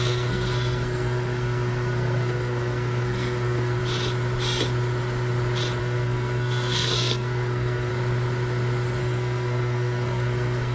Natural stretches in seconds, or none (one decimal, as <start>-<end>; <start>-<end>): 3.8-5.8; 7.9-9.0